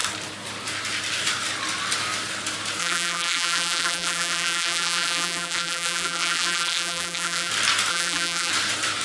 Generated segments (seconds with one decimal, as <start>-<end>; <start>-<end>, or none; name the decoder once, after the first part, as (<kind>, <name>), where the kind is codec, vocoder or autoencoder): 2.8-7.5 (vocoder, BigVGAN v2); 7.9-8.5